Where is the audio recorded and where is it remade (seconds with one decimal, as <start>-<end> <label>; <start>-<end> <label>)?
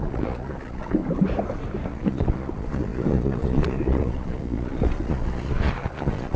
0.0-1.0 remade; 1.0-1.9 recorded; 1.9-6.4 remade